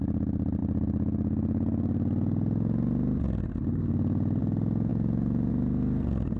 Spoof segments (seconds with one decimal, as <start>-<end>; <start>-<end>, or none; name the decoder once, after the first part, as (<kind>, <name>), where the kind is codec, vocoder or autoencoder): 4.9-5.5 (vocoder, Vocos)